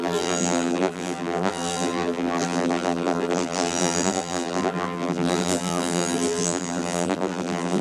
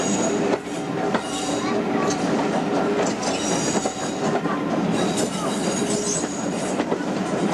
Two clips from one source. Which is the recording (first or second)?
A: second